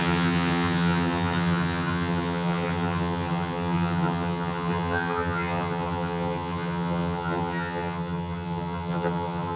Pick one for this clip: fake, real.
fake